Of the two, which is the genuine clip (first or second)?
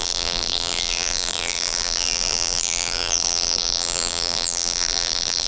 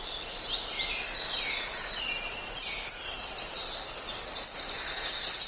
second